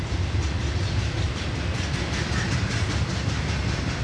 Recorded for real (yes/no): yes